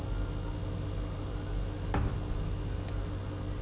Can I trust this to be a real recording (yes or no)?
yes